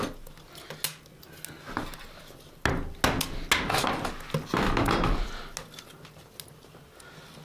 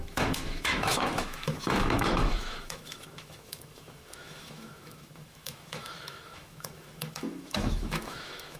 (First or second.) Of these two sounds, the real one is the first